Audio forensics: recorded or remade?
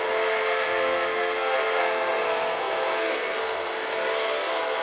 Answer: remade